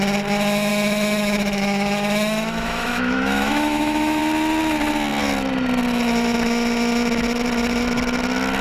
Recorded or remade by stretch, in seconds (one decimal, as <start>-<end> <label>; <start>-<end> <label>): 0.0-0.7 recorded; 0.7-4.2 remade; 4.2-8.6 recorded

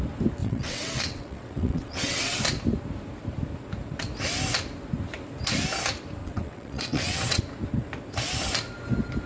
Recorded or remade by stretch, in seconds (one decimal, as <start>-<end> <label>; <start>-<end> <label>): 0.0-0.4 recorded; 0.4-2.4 remade; 2.4-6.2 recorded; 6.2-7.4 remade; 7.4-9.3 recorded

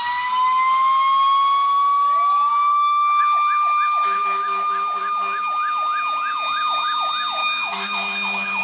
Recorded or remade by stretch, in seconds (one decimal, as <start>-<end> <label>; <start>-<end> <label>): 0.0-2.5 recorded; 2.5-3.2 remade; 3.2-7.4 recorded; 7.4-8.6 remade

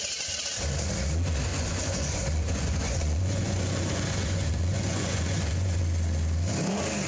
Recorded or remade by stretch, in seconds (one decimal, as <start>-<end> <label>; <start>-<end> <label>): 0.0-1.5 recorded; 1.5-5.8 remade; 5.8-7.1 recorded

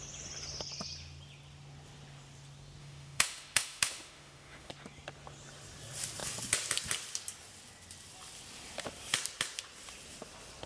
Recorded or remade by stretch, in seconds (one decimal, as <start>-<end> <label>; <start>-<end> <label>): 0.0-2.8 recorded; 2.8-4.7 remade; 4.7-10.7 recorded

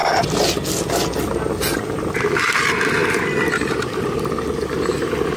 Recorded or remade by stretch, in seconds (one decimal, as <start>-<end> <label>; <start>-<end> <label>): 0.0-5.4 recorded

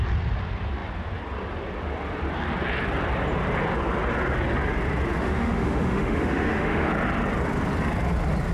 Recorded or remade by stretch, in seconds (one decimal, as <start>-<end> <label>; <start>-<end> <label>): 0.0-5.2 recorded; 5.2-6.9 remade; 6.9-8.5 recorded